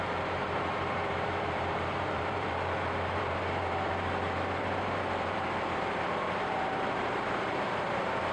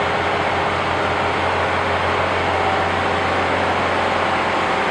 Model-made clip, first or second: first